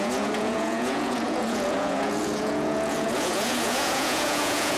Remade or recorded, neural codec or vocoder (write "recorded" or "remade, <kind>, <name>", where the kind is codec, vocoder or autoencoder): remade, vocoder, Vocos